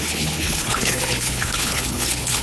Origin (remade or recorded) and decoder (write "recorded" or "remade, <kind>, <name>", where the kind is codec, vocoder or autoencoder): remade, codec, HILCodec